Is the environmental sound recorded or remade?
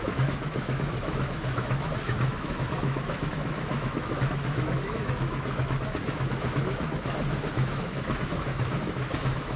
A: remade